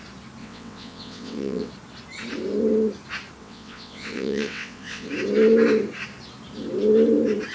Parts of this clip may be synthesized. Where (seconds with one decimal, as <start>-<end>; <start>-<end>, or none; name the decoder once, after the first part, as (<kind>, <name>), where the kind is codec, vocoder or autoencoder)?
0.4-1.7 (vocoder, WaveNeXt); 3.4-5.1